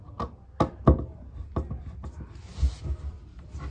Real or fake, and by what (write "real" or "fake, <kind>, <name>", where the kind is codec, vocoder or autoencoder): real